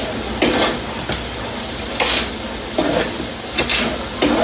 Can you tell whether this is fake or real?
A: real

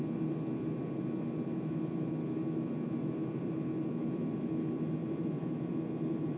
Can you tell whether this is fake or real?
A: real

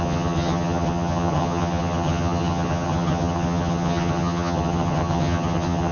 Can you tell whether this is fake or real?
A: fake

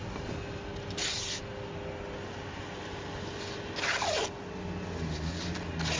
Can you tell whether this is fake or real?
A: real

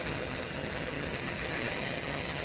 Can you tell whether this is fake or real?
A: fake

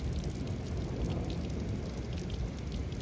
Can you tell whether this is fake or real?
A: real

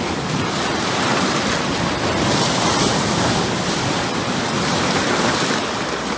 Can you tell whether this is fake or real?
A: real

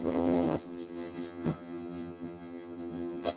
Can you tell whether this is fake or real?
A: fake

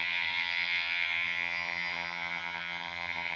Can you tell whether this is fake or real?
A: fake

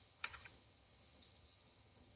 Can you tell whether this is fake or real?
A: fake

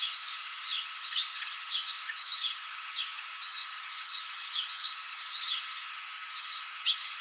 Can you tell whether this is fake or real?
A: fake